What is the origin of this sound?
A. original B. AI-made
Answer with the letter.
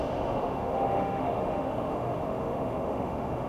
B